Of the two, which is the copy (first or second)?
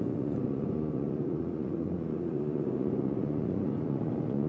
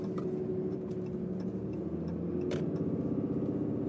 first